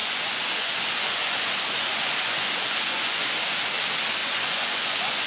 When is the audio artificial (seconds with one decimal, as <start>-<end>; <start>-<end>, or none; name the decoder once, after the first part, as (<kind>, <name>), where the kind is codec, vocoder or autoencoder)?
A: 0.0-3.2 (vocoder, Vocos); 4.2-5.3